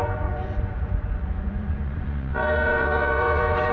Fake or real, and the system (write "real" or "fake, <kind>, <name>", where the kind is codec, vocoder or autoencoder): fake, vocoder, Vocos